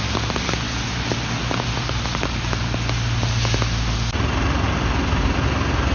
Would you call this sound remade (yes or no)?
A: no